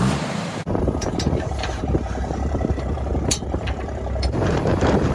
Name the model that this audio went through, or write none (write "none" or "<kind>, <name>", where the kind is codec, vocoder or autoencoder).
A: vocoder, BigVGAN v2